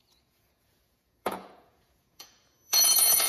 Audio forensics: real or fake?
fake